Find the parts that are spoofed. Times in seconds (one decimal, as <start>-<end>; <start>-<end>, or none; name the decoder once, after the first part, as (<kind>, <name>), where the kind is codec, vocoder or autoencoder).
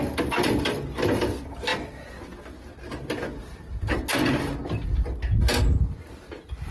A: 3.4-3.9 (vocoder, BigVGAN v2)